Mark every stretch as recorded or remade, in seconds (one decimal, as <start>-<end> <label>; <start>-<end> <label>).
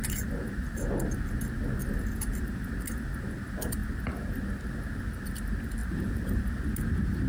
0.0-5.8 recorded; 5.8-6.4 remade; 6.4-7.3 recorded